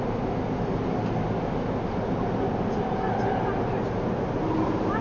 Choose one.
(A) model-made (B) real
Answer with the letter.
B